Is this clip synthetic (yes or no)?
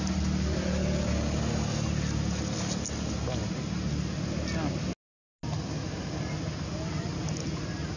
no